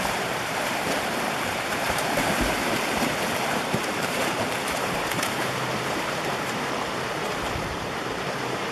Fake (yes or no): yes